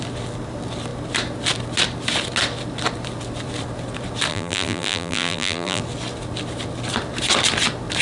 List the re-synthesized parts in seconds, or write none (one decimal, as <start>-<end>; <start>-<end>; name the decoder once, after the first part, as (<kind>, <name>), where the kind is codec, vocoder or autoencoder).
4.3-5.8 (vocoder, BigVGAN v2)